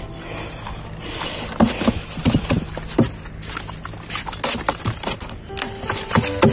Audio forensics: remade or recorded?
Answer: recorded